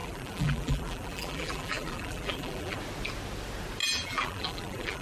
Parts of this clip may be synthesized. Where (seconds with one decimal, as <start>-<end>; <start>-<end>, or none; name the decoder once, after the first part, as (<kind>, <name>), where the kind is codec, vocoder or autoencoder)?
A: 0.0-2.8 (vocoder, BigVGAN v2); 3.8-5.0